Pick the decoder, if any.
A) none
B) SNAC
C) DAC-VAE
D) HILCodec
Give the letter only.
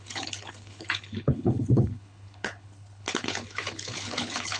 D